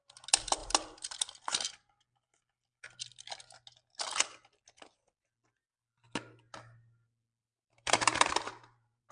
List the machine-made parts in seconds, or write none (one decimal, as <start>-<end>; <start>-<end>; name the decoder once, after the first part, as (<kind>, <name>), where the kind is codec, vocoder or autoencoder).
7.4-9.1 (vocoder, BigVGAN v2)